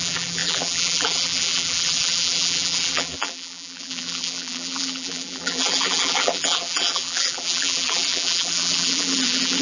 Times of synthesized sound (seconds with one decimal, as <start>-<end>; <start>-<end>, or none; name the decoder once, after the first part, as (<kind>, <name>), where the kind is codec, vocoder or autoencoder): 0.0-9.6 (vocoder, BigVGAN v2)